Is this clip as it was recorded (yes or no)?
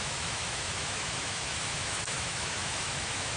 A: no